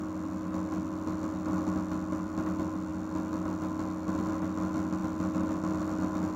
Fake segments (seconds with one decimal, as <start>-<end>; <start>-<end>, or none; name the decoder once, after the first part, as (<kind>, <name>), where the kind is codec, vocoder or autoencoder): none